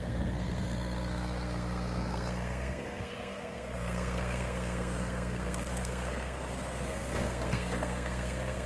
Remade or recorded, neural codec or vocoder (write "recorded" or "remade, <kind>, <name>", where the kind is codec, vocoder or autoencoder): remade, codec, SNAC